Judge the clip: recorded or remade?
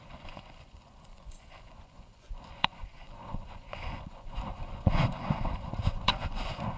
remade